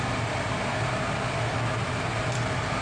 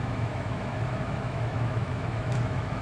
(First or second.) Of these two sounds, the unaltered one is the first